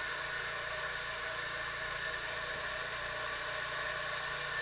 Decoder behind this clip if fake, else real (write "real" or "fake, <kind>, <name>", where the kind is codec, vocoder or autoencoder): real